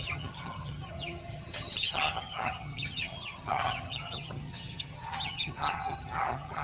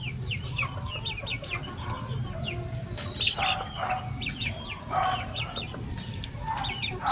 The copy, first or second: first